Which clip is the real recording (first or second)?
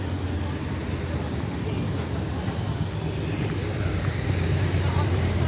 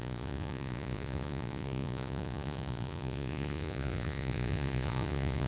first